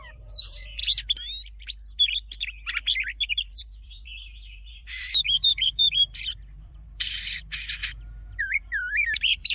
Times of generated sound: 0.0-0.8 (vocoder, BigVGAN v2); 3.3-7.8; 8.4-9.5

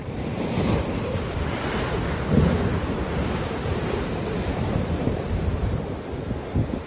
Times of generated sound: 0.0-1.9 (vocoder, BigVGAN v2); 4.5-5.9

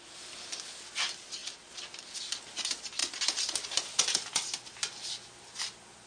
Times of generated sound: none